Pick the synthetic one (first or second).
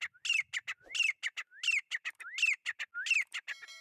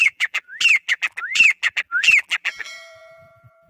second